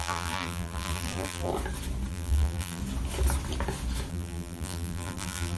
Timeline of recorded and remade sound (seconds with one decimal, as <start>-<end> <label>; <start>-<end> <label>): 0.0-1.5 remade; 1.5-2.1 recorded; 2.1-2.8 remade; 2.8-4.1 recorded; 4.1-5.6 remade